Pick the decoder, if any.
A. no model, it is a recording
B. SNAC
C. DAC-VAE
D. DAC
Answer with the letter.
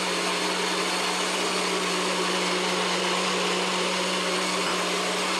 A